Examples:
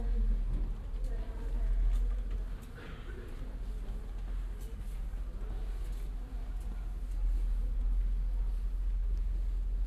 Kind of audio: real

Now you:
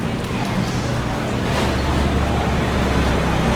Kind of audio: real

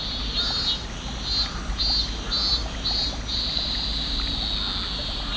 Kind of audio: real